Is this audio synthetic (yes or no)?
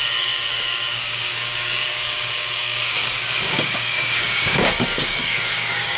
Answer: yes